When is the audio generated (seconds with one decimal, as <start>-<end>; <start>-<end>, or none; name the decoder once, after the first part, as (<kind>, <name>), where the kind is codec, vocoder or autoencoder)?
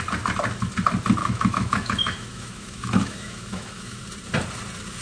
1.2-4.0 (autoencoder, DAC-VAE)